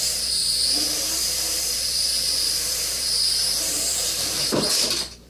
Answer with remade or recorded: remade